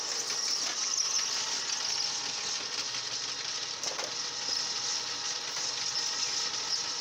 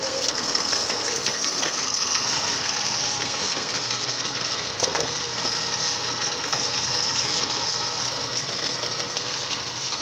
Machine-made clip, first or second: second